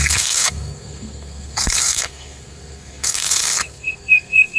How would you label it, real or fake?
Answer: fake